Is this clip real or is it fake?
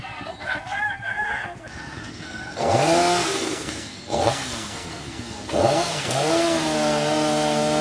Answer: fake